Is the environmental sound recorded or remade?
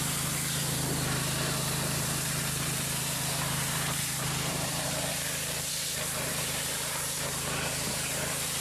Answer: remade